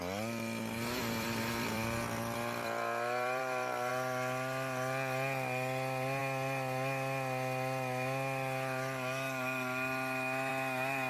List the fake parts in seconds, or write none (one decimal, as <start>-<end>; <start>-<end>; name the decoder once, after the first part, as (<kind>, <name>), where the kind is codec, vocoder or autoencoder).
1.0-3.9 (vocoder, BigVGAN v2)

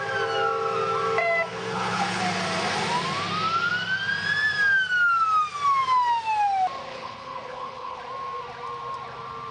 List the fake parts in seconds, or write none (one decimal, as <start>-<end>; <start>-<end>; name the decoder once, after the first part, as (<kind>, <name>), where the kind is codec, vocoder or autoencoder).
1.5-2.2 (codec, HILCodec); 6.9-8.0

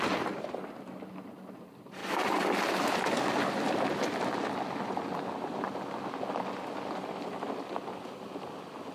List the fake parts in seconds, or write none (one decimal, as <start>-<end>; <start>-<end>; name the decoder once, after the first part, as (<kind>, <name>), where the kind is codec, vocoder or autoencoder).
none

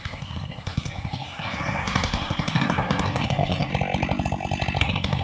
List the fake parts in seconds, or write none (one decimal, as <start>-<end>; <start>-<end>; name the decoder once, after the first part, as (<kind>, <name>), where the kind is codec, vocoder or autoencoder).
0.0-3.7 (codec, SNAC); 4.8-5.2

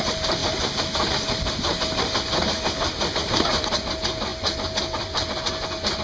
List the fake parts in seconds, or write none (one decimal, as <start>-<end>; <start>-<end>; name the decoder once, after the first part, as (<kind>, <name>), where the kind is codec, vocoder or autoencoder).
none

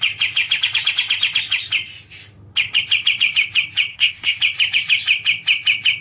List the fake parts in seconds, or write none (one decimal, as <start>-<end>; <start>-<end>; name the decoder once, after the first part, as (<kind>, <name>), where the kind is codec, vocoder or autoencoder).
3.9-4.4 (codec, ZipCodec)

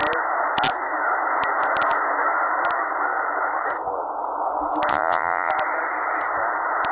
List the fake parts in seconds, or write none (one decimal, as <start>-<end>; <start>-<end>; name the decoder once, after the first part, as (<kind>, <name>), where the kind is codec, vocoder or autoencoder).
4.9-5.5 (vocoder, Vocos)